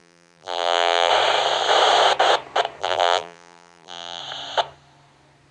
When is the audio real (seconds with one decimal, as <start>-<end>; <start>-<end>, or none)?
1.1-2.8; 4.2-5.5